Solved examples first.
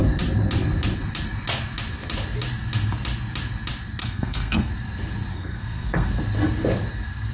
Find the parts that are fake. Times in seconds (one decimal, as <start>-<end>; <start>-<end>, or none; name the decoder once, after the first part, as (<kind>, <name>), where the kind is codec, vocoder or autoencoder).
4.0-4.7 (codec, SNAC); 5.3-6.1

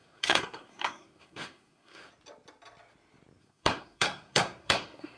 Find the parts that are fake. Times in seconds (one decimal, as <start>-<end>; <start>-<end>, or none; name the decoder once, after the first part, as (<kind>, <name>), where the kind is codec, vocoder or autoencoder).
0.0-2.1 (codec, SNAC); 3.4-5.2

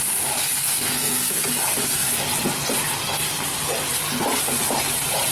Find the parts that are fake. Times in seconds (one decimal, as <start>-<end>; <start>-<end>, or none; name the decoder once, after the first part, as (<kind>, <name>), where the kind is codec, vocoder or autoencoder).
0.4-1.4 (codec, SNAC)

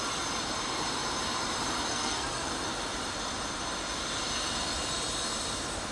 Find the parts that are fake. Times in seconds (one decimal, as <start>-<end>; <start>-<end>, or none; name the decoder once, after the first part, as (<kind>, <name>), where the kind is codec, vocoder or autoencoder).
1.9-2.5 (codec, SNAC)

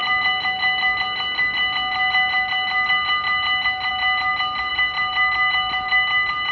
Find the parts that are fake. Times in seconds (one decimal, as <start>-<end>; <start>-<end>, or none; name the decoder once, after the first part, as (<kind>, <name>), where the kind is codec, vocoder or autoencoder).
none

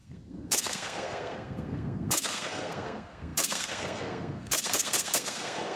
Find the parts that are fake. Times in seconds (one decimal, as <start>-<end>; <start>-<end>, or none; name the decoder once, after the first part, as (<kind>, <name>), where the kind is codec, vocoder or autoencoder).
0.0-5.8 (codec, SNAC)

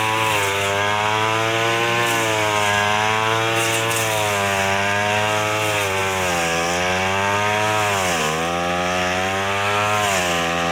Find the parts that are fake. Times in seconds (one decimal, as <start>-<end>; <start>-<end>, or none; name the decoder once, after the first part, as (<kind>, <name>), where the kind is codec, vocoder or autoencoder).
none